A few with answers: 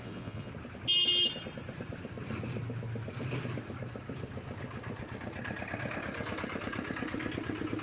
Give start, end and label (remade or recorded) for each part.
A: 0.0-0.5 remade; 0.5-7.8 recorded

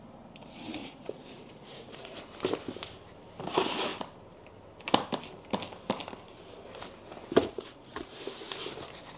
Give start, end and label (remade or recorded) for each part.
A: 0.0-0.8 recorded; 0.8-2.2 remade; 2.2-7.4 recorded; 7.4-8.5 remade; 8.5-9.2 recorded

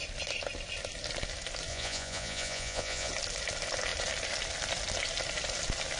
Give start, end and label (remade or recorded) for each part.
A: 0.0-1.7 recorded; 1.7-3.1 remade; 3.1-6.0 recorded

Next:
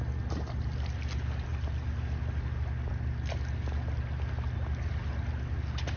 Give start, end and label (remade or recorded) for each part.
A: 0.0-6.0 recorded